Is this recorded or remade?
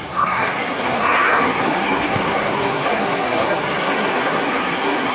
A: remade